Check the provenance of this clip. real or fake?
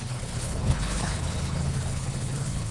fake